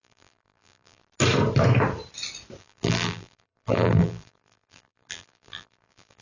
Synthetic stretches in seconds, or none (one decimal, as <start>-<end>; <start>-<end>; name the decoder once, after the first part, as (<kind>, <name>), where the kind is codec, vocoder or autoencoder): 0.0-1.0 (vocoder, BigVGAN v2); 2.6-6.2